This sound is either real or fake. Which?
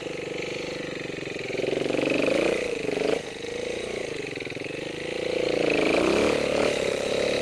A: real